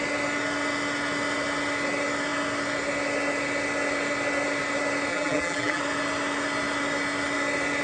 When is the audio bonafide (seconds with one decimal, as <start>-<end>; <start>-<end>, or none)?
0.0-5.1; 5.8-7.8